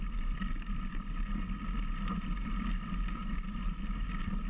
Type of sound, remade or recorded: recorded